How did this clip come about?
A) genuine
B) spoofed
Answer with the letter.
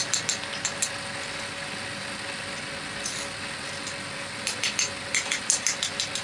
A